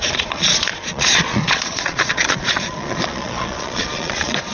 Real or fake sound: fake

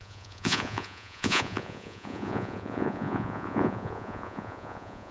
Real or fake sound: fake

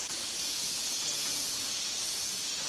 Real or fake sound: fake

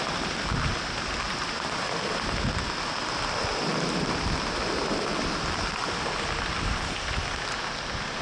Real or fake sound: real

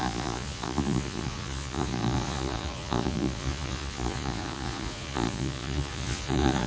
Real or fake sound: fake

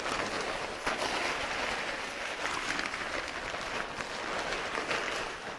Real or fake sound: real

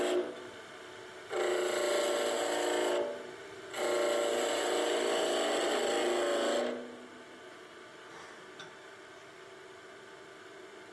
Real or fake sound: real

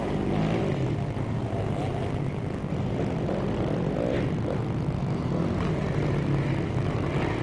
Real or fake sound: real